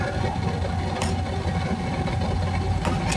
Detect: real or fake real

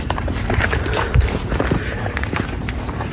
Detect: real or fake fake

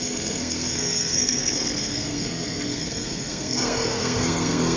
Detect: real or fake fake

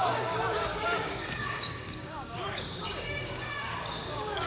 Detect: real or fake fake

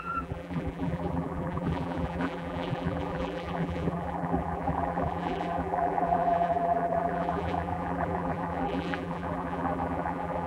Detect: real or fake fake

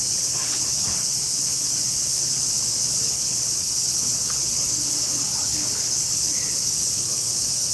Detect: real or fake fake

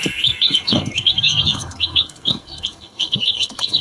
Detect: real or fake fake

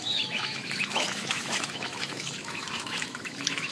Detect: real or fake fake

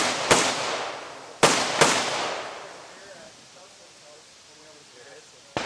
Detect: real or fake fake